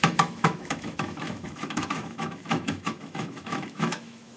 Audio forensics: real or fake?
fake